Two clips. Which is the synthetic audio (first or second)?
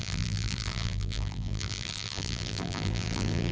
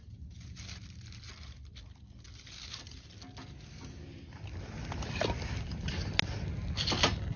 first